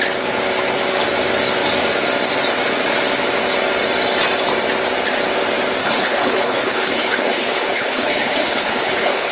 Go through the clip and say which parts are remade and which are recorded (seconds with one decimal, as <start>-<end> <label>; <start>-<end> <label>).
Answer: 0.0-5.8 recorded; 5.8-9.3 remade